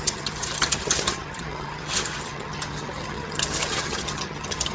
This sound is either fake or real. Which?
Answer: fake